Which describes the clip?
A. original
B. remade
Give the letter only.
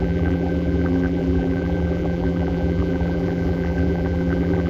B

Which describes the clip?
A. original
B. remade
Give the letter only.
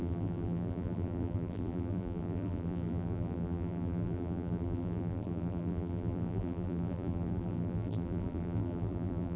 B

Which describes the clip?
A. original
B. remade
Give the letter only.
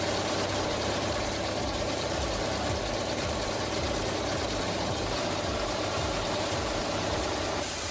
B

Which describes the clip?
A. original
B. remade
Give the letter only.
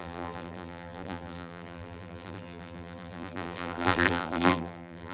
B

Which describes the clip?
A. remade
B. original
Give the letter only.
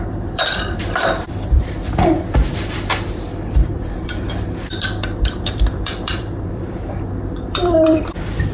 A